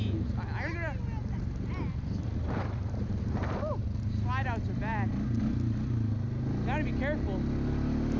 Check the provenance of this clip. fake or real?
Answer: real